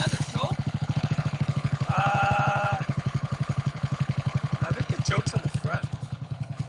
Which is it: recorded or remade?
remade